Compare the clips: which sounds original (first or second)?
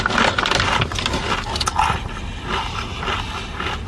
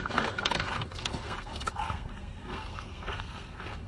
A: first